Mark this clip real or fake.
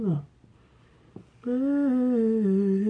real